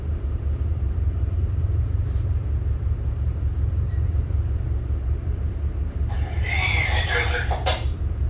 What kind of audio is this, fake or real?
fake